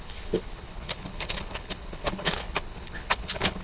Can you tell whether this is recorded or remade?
remade